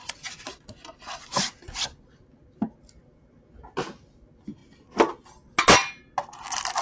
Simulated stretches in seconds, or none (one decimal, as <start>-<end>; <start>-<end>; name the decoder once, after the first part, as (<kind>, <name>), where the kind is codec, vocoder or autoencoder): 0.0-1.2 (vocoder, BigVGAN v2)